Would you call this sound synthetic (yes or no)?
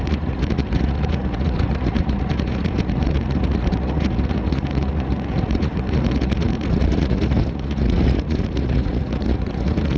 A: yes